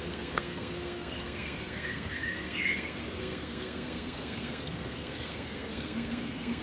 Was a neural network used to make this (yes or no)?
yes